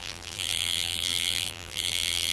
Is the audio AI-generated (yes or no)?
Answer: yes